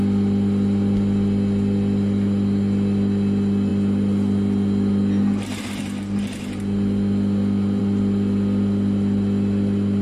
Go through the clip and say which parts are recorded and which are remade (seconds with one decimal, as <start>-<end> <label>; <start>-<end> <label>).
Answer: 0.0-10.0 recorded